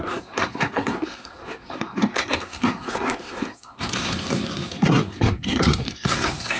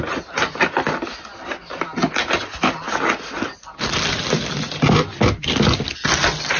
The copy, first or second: first